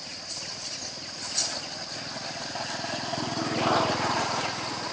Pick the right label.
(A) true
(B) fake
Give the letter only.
A